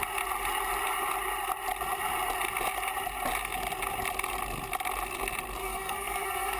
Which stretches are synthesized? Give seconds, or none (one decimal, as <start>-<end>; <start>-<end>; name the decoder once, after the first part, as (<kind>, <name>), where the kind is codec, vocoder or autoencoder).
5.6-6.6 (codec, SNAC)